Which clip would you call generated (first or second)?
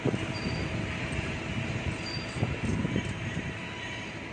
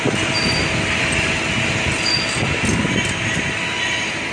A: first